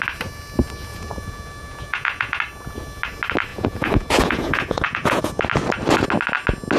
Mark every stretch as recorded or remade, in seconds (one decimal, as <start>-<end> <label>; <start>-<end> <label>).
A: 0.0-0.9 recorded; 0.9-2.4 remade; 2.4-3.5 recorded; 3.5-5.2 remade; 5.2-6.8 recorded